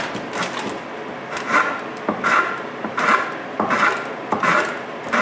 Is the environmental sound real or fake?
real